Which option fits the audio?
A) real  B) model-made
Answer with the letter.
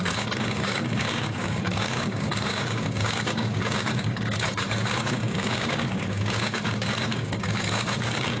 B